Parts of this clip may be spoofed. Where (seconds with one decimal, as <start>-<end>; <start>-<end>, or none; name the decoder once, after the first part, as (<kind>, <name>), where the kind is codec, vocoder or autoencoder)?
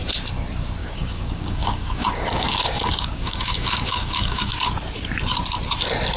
0.8-4.5 (codec, DAC)